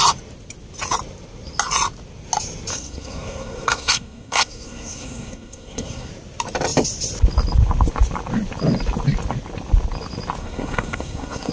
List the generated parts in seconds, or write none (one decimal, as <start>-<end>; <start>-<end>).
2.7-6.1; 10.4-11.5